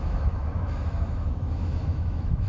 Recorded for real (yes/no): no